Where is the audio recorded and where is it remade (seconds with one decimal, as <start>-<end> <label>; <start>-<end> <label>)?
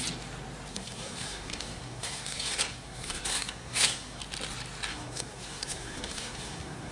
0.0-0.7 recorded; 0.7-4.2 remade; 4.2-4.9 recorded; 4.9-6.9 remade